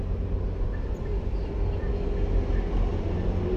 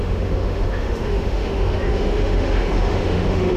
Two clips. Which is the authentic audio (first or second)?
first